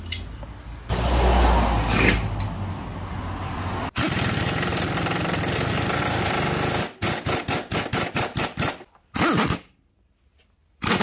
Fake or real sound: real